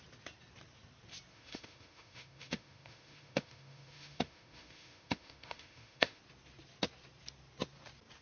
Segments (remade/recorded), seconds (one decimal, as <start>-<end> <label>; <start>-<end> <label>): 0.0-1.3 recorded; 1.3-6.2 remade; 6.2-8.2 recorded